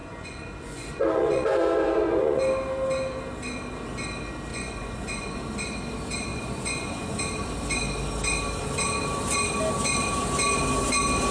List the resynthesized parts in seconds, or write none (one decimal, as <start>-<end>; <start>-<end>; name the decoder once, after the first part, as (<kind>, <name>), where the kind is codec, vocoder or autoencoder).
0.0-2.4 (vocoder, Vocos); 4.5-5.4; 6.3-7.2